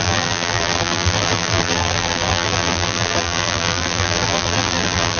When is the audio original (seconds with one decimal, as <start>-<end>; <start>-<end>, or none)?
none